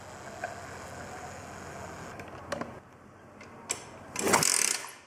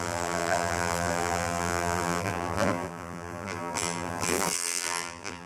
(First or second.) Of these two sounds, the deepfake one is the second